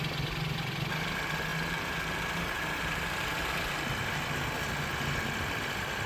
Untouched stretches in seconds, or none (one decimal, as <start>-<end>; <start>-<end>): 0.0-1.5; 3.5-6.1